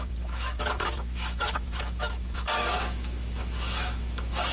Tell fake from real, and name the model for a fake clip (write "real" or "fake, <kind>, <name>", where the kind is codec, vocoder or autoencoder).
fake, autoencoder, DAC-VAE